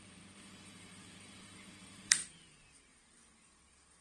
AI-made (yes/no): yes